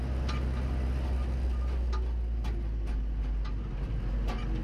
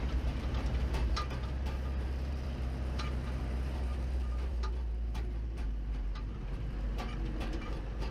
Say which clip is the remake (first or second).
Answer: second